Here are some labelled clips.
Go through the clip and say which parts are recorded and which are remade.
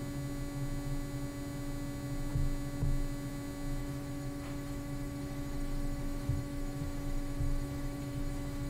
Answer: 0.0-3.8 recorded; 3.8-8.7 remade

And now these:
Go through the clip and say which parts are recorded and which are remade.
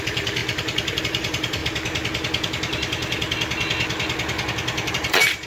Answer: 0.0-1.6 remade; 1.6-4.9 recorded; 4.9-5.5 remade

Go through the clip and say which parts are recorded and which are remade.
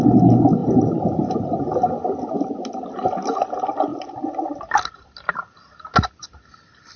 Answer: 0.0-0.6 recorded; 0.6-1.9 remade; 1.9-7.0 recorded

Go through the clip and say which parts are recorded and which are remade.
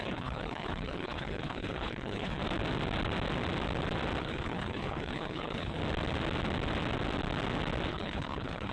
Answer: 0.0-2.4 remade; 2.4-4.2 recorded; 4.2-5.8 remade; 5.8-7.9 recorded; 7.9-8.7 remade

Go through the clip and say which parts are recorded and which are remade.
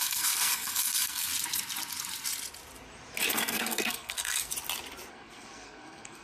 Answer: 0.0-1.3 remade; 1.3-3.3 recorded; 3.3-4.5 remade; 4.5-5.1 recorded; 5.1-6.2 remade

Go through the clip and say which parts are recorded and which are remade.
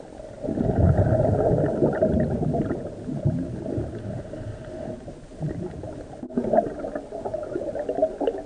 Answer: 0.0-8.5 recorded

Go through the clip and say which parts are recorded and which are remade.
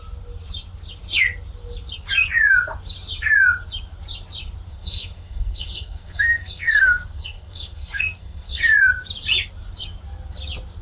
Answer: 0.0-4.7 recorded; 4.7-8.6 remade; 8.6-10.8 recorded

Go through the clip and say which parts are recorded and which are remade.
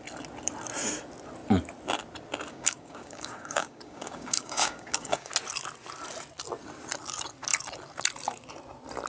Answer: 0.0-2.5 recorded; 2.5-5.3 remade; 5.3-9.1 recorded